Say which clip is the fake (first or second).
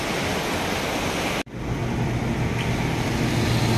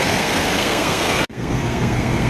second